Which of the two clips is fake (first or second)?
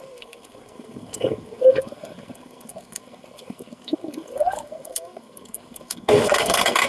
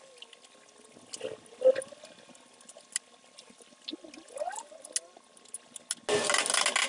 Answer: first